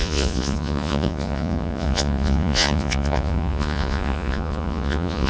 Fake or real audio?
fake